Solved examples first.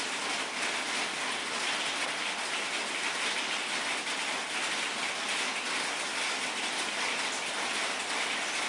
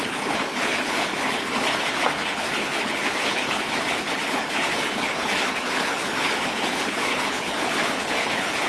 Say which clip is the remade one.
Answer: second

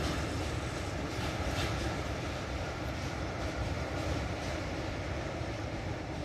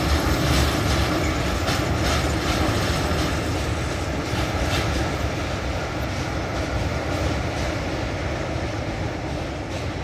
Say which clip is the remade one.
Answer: first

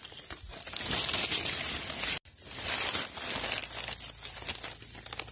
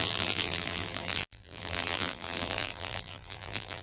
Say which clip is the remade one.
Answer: second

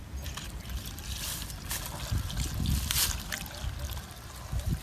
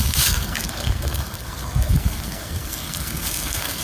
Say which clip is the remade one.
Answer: second